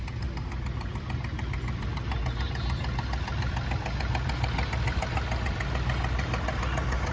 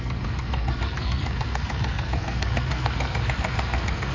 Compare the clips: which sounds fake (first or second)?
second